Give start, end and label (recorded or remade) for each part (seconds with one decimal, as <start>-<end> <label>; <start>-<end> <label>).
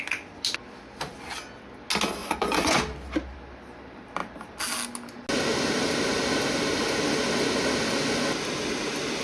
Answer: 0.0-2.2 recorded; 2.2-2.8 remade; 2.8-9.2 recorded